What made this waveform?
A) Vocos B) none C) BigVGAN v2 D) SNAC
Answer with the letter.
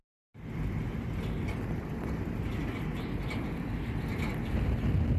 B